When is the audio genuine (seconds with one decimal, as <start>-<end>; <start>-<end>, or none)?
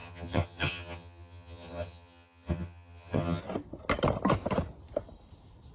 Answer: 3.4-5.7